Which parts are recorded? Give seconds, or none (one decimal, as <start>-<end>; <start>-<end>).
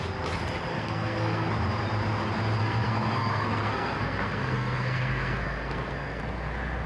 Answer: 0.0-0.7; 1.5-2.6; 6.2-6.9